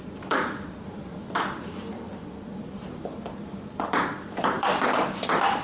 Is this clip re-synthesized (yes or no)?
yes